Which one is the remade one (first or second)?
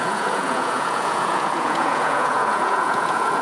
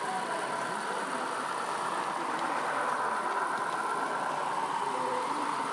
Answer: first